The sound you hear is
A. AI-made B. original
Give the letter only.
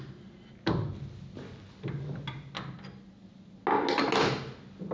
B